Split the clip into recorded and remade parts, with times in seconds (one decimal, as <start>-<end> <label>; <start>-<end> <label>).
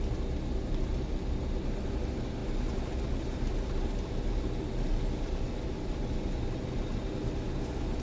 0.0-8.0 recorded